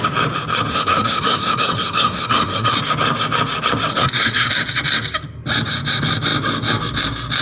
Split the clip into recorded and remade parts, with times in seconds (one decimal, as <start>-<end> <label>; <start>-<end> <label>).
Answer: 0.0-0.7 recorded; 0.7-2.8 remade; 2.8-3.9 recorded; 3.9-4.5 remade; 4.5-7.4 recorded